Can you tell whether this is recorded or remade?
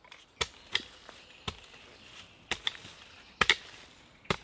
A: recorded